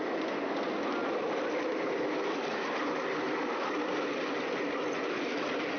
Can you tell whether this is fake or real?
real